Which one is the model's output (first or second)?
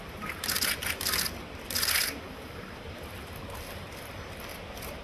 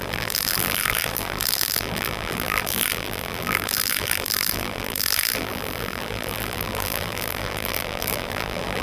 second